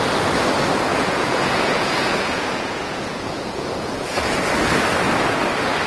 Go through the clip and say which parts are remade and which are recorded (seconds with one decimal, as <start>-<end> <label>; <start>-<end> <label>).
0.0-0.9 recorded; 0.9-4.4 remade; 4.4-5.9 recorded